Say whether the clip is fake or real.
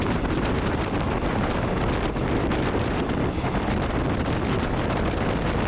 real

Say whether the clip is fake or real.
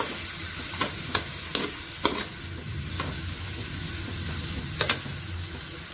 real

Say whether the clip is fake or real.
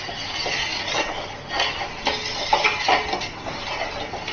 real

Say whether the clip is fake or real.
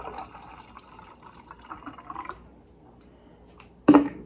real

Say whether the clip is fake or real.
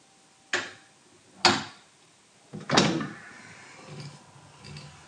real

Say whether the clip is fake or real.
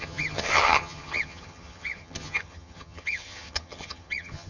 fake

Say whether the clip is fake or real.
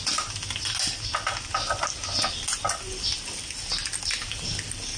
real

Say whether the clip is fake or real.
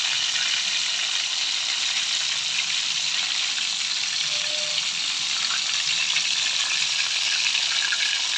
real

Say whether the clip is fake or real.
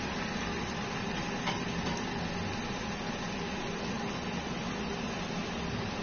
real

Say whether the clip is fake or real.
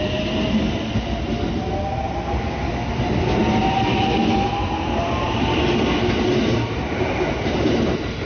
real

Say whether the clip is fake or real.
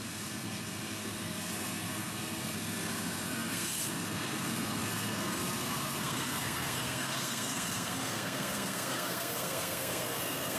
fake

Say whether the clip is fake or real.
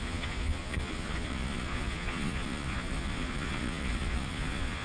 fake